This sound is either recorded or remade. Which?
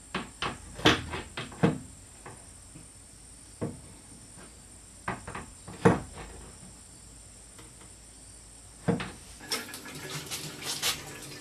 recorded